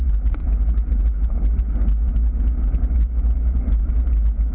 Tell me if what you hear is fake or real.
real